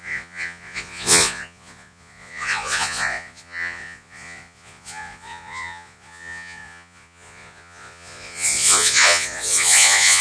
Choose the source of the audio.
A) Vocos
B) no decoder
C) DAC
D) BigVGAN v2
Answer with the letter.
A